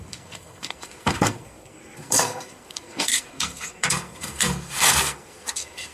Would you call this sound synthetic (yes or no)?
yes